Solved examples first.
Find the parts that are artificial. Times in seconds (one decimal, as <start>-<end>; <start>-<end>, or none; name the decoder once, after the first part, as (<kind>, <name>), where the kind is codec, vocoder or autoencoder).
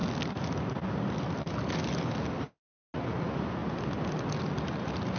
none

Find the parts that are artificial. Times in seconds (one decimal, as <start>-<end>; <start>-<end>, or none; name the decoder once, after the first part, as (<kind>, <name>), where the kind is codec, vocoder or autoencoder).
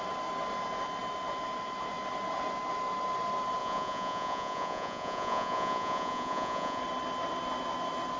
3.6-6.8 (vocoder, Vocos)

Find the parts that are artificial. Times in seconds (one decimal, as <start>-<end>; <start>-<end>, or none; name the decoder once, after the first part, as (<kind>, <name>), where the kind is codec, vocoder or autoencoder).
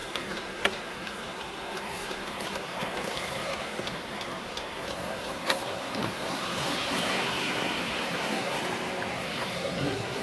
0.0-8.6 (codec, SNAC); 9.1-10.2